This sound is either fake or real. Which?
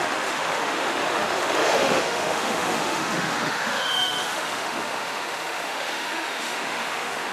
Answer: fake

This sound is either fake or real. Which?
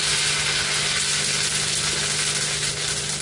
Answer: real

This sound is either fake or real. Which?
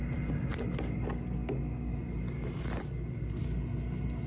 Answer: real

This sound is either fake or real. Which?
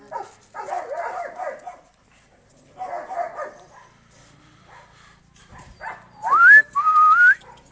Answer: real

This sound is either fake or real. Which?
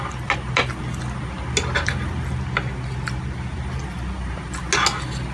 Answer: real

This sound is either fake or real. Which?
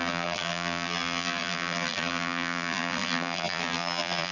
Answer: fake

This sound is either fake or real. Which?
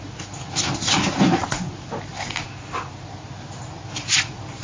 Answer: real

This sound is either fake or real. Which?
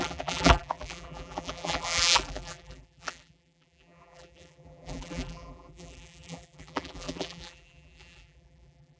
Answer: fake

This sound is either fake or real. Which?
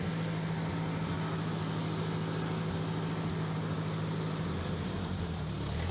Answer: real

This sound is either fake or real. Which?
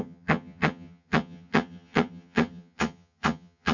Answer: fake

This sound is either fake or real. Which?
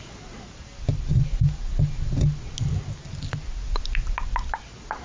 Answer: real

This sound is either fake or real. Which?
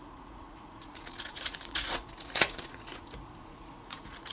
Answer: fake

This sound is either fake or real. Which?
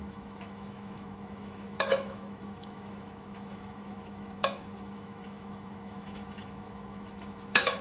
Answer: fake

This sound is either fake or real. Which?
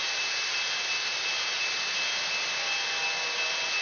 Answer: real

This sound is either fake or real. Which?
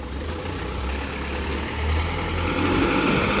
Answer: real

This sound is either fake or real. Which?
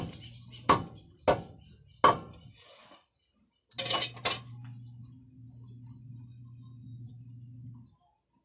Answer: real